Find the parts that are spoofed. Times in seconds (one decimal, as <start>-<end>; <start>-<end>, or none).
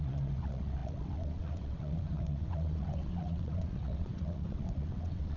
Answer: 0.0-5.4